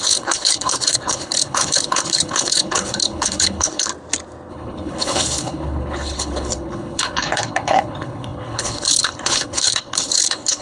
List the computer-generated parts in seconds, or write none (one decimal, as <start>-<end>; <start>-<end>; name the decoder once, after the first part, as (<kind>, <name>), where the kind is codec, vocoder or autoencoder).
0.0-3.9 (codec, HILCodec); 4.5-10.6